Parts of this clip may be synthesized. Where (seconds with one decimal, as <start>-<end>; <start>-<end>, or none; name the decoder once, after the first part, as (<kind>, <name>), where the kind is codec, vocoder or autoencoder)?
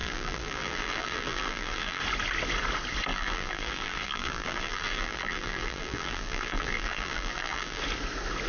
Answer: 0.0-2.0 (vocoder, BigVGAN v2); 3.1-7.8